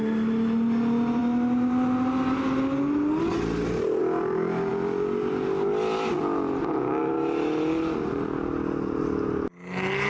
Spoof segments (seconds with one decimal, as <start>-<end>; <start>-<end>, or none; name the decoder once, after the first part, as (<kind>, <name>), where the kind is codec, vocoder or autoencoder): none